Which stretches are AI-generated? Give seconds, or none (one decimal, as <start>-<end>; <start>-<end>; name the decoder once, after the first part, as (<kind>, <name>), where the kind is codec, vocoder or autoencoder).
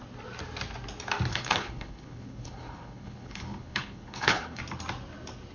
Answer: 1.3-4.6 (codec, HILCodec)